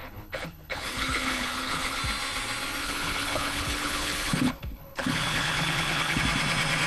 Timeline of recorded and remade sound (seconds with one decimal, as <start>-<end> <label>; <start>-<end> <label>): 0.0-2.0 remade; 2.0-2.8 recorded; 2.8-6.2 remade; 6.2-6.9 recorded

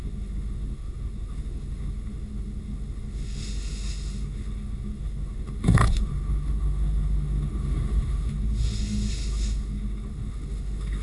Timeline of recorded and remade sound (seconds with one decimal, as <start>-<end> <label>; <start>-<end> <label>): 0.0-11.0 remade